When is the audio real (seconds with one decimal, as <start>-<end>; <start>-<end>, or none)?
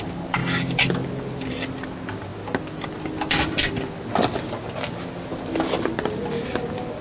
0.0-7.0